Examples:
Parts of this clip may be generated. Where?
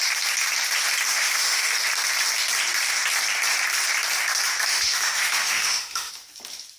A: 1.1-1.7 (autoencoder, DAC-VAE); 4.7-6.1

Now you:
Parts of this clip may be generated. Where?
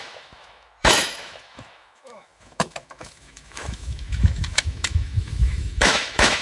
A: 0.0-6.4 (autoencoder, DAC-VAE)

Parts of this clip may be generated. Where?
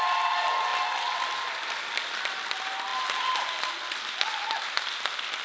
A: none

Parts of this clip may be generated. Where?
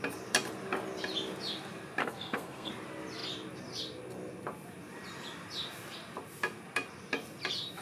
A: 2.0-2.7 (codec, SNAC)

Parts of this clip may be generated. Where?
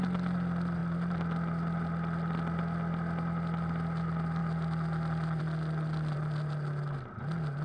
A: none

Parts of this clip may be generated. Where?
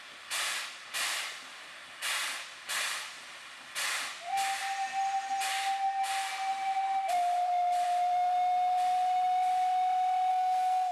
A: 10.3-10.9 (codec, SNAC)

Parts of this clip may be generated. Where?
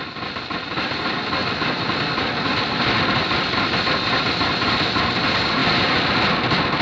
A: none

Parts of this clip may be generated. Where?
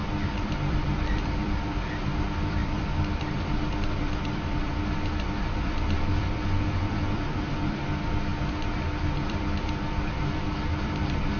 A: 0.0-11.4 (vocoder, BigVGAN v2)